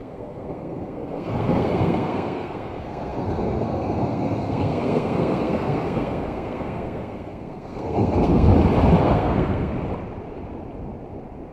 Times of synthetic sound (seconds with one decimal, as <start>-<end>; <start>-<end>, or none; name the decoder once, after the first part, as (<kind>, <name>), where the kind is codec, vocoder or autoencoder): 0.0-8.5 (codec, SNAC); 9.0-9.7

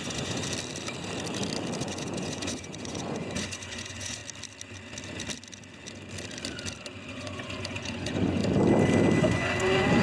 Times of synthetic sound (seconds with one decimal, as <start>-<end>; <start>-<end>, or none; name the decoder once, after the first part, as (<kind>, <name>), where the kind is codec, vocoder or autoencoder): 0.0-0.4 (vocoder, Vocos); 1.8-4.2; 7.1-8.4; 9.2-10.0

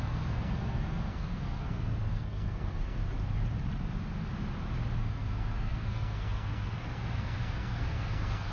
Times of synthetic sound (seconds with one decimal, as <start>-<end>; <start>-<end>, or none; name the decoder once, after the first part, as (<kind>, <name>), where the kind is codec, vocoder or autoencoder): 0.0-3.0 (codec, SNAC); 5.0-8.5

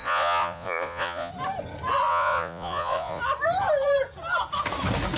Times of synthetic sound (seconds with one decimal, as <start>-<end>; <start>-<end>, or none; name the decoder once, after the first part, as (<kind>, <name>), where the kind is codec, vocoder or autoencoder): 0.0-1.3 (vocoder, Vocos); 2.1-3.2

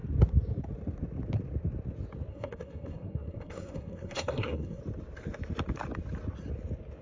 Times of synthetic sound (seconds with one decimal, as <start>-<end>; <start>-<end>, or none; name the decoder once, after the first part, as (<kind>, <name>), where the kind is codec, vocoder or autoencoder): 2.3-4.8 (codec, SNAC)

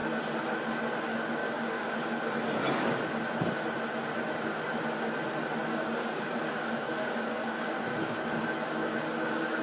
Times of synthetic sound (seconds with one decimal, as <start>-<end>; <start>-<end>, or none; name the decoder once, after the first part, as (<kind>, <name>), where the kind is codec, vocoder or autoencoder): 1.4-2.3 (codec, DAC); 5.6-8.3; 8.8-9.6

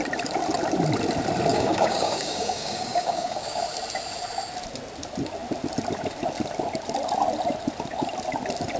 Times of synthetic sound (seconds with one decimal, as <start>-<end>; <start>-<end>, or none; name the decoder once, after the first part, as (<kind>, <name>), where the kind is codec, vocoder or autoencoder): 1.5-3.6 (codec, DAC)